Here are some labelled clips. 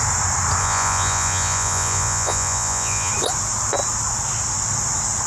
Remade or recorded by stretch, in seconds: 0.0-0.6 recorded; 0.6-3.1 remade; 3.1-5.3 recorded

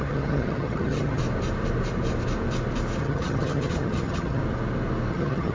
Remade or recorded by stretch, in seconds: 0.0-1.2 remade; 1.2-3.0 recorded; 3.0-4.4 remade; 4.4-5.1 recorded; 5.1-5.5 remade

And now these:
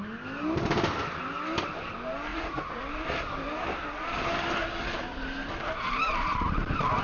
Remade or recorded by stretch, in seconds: 0.0-2.3 recorded; 2.3-2.8 remade; 2.8-7.0 recorded

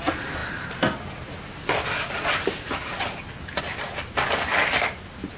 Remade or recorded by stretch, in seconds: 0.0-5.4 recorded

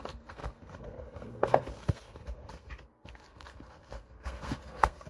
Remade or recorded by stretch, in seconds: 0.0-5.1 remade

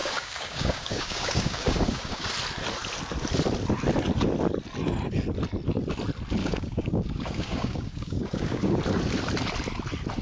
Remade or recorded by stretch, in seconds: 0.0-2.3 remade; 2.3-6.4 recorded; 6.4-8.8 remade; 8.8-10.2 recorded

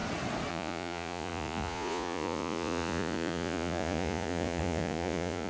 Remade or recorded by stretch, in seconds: 0.0-0.5 recorded; 0.5-5.5 remade